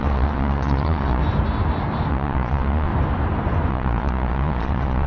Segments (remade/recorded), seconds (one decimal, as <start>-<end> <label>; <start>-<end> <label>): 0.0-1.2 remade; 1.2-2.1 recorded; 2.1-2.9 remade; 2.9-3.7 recorded; 3.7-5.1 remade